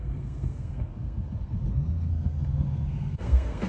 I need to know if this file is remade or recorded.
remade